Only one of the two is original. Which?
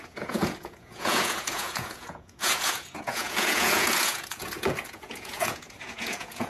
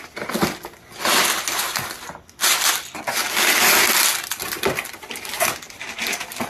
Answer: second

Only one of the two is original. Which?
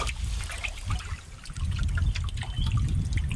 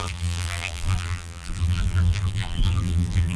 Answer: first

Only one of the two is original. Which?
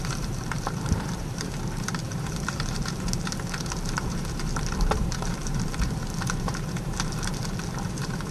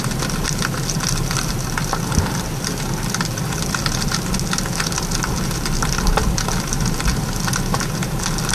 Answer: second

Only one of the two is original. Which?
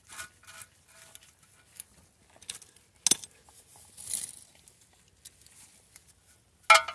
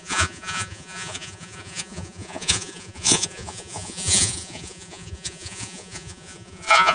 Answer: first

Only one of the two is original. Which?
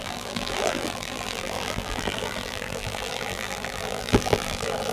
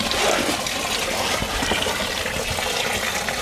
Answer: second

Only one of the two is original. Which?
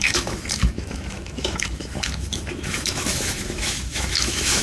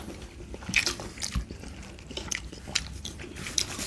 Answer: second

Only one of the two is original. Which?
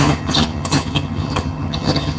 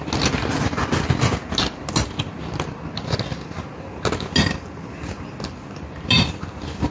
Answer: second